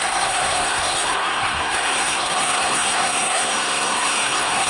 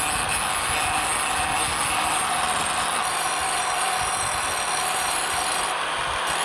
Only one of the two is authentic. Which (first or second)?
second